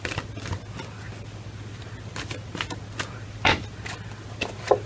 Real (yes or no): yes